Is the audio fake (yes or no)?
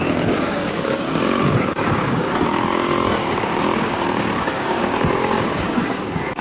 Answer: yes